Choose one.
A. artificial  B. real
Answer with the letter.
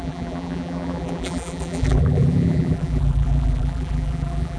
A